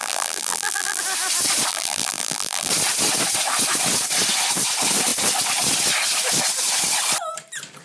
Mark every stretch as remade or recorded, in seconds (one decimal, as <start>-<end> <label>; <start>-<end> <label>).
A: 0.0-1.0 remade; 1.0-1.7 recorded; 1.7-2.7 remade; 2.7-7.8 recorded